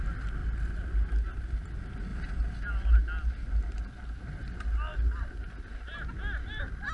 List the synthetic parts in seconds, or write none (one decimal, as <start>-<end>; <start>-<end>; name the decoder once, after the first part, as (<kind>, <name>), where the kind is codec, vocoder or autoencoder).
none